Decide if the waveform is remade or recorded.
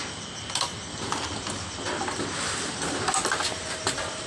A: recorded